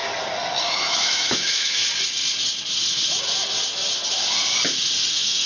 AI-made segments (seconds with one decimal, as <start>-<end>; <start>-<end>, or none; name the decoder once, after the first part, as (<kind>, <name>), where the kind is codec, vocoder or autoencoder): 0.7-1.8 (autoencoder, DAC-VAE); 5.1-5.5